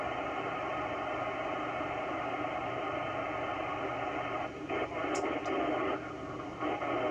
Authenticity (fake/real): fake